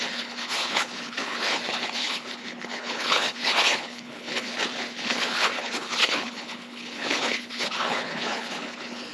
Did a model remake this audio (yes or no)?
yes